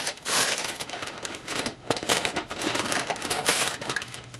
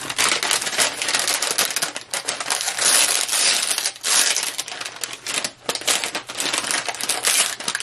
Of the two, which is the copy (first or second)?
first